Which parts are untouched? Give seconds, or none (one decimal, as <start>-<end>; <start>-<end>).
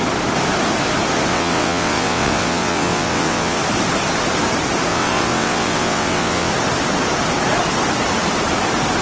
0.0-1.3; 3.6-4.9; 6.5-9.0